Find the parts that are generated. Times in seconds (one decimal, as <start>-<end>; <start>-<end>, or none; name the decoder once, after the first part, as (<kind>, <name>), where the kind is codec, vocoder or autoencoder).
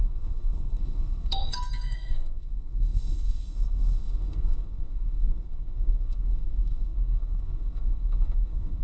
0.0-8.8 (codec, SNAC)